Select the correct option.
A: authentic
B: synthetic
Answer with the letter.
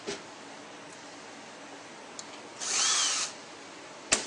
A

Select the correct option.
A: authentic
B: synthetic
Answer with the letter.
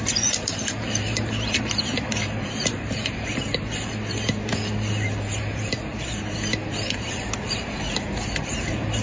B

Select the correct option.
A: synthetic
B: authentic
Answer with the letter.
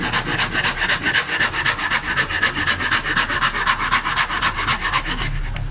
B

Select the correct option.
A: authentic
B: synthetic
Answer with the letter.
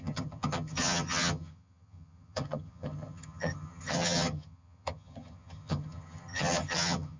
B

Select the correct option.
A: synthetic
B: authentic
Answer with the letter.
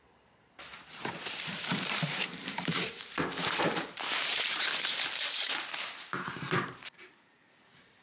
A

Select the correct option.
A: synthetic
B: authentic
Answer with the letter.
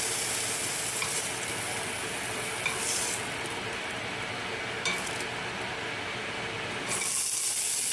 B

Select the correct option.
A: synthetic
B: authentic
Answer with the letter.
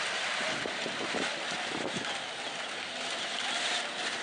B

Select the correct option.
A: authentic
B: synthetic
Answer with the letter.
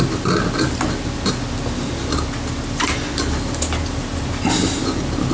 A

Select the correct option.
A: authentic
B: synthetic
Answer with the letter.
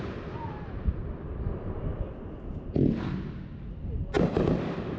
A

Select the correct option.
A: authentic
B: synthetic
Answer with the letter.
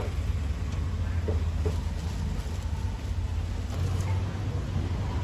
A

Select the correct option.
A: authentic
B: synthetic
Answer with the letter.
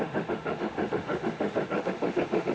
B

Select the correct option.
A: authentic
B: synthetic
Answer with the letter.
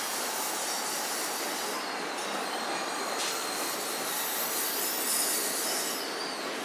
A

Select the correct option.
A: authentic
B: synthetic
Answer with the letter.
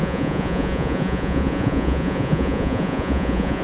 B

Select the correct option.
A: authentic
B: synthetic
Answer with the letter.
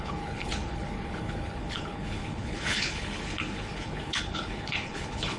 B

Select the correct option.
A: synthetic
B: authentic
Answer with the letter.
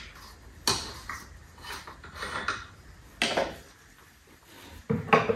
B